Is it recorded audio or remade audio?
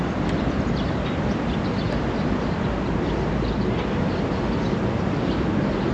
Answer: recorded